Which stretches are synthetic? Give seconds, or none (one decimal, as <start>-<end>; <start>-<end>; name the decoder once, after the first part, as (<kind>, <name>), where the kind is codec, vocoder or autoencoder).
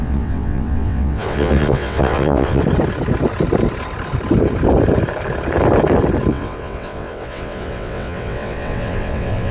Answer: 0.0-2.6 (vocoder, WaveNeXt); 6.3-9.5